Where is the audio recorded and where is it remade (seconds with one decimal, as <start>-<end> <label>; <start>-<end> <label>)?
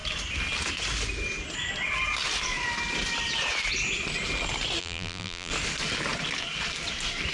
0.0-4.8 recorded; 4.8-5.5 remade; 5.5-7.3 recorded